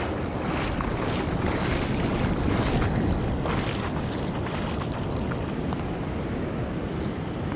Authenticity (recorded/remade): recorded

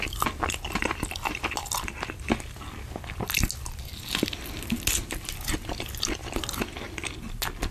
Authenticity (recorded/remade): recorded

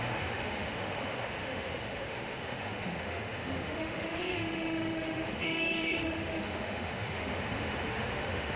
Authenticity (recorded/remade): remade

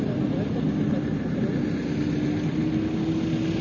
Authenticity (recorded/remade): recorded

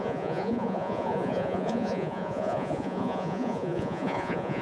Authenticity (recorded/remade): remade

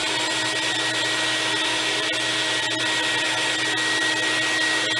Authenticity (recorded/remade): recorded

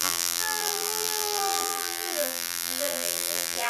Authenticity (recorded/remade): remade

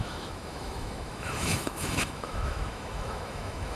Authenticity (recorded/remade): remade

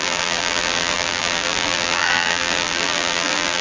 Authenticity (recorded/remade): remade